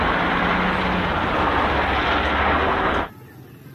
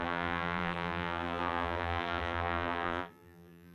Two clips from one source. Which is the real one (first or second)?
first